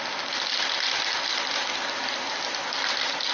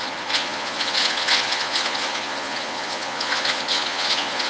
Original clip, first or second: first